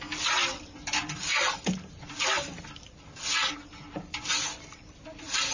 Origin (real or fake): real